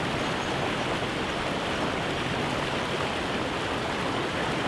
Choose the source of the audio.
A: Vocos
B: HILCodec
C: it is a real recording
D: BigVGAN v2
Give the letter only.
C